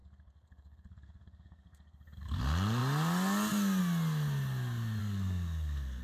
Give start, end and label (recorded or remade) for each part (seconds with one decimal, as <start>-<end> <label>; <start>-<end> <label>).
0.0-2.4 remade; 2.4-5.0 recorded; 5.0-6.0 remade